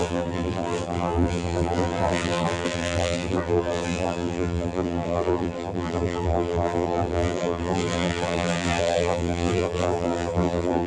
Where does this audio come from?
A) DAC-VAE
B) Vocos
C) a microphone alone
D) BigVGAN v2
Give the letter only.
D